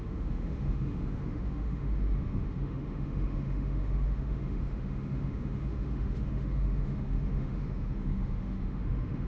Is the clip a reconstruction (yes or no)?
yes